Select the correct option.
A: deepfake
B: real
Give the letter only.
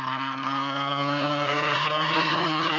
A